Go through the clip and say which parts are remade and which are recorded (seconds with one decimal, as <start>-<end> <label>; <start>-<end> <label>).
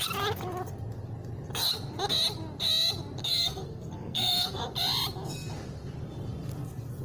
0.0-3.2 recorded; 3.2-4.7 remade; 4.7-7.0 recorded